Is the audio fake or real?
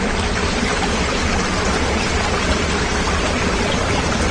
real